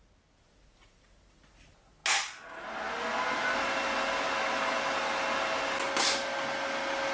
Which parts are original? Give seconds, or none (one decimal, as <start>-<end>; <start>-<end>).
0.0-7.1